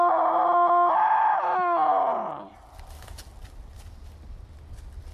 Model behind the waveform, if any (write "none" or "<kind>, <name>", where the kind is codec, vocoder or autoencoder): none